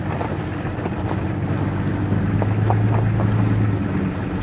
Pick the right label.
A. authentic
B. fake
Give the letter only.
A